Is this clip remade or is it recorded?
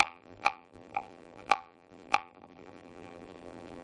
remade